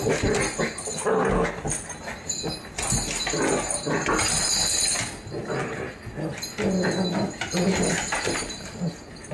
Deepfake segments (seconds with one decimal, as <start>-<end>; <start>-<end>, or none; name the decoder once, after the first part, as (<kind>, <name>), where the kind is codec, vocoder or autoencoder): 7.7-9.3 (vocoder, BigVGAN v2)